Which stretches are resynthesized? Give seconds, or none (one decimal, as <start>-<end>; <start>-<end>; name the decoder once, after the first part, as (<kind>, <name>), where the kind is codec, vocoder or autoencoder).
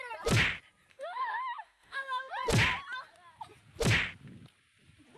0.9-2.3 (autoencoder, DAC-VAE)